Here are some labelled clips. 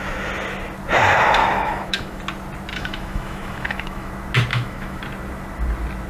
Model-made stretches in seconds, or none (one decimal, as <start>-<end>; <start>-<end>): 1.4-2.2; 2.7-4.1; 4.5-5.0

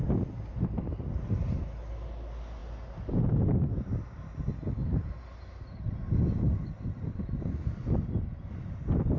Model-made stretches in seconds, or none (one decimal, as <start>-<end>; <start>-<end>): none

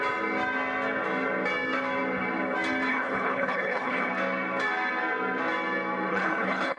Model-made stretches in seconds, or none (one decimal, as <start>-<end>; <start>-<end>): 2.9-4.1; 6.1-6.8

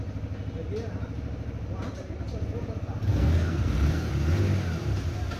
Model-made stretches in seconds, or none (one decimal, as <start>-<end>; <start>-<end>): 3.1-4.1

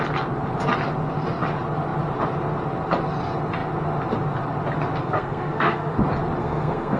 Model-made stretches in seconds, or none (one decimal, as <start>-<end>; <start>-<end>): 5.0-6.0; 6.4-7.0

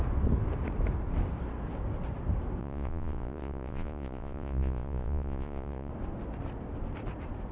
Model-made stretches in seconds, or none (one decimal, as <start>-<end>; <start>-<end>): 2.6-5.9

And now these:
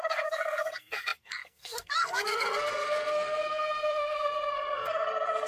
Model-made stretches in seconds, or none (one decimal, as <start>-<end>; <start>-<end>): 0.0-5.5

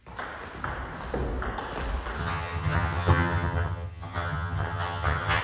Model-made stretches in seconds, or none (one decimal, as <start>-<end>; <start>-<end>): 2.2-5.4